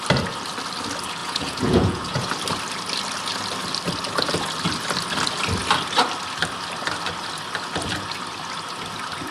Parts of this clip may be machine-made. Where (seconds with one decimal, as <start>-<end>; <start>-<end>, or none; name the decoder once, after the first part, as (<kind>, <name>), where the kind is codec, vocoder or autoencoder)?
1.2-2.3 (vocoder, Vocos)